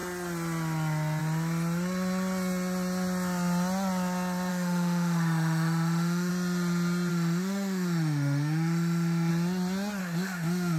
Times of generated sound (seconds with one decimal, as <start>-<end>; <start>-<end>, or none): 4.5-6.3; 7.1-9.3; 10.0-10.8